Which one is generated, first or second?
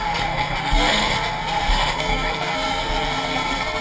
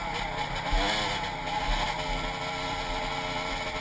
first